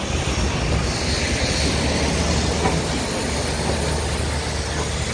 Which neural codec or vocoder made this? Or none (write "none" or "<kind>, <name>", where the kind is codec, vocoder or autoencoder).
none